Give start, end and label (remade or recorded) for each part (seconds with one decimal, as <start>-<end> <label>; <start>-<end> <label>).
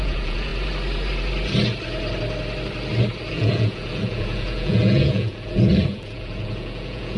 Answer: 0.0-0.5 remade; 0.5-3.3 recorded; 3.3-7.2 remade